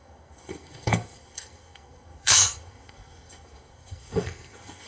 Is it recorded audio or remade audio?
remade